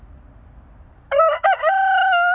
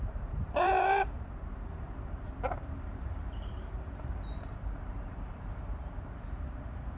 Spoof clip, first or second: second